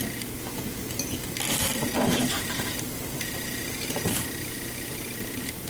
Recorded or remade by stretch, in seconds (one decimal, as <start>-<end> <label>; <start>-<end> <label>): 0.0-1.7 recorded; 1.7-5.1 remade; 5.1-5.7 recorded